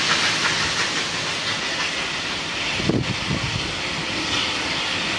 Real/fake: real